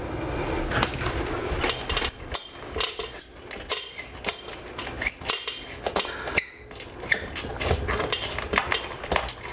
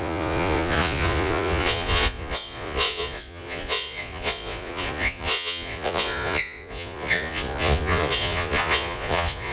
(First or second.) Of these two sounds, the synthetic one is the second